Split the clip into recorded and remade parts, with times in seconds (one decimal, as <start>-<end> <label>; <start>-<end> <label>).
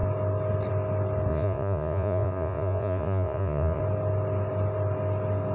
0.0-1.3 recorded; 1.3-3.8 remade; 3.8-5.5 recorded